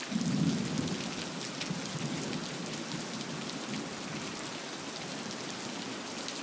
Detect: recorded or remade recorded